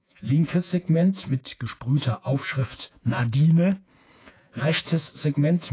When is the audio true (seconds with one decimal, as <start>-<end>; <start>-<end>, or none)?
1.4-2.0; 3.2-4.2